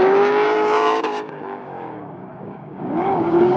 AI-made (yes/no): yes